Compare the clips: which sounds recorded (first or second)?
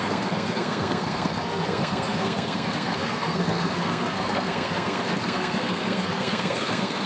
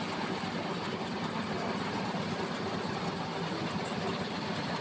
second